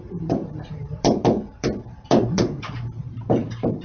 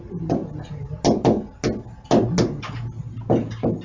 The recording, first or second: second